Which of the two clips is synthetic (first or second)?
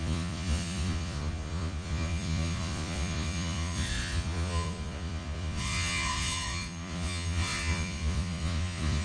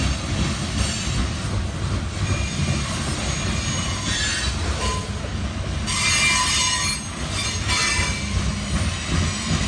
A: first